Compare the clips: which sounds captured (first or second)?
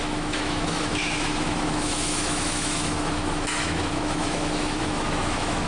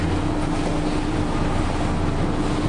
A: second